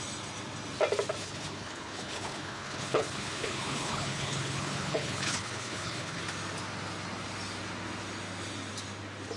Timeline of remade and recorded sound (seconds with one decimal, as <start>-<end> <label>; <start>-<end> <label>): 0.0-1.2 recorded; 1.2-6.2 remade; 6.2-9.4 recorded